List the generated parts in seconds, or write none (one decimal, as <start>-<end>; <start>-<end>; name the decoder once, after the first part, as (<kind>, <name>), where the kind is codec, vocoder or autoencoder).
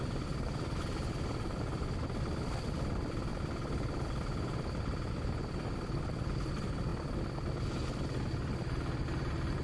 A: none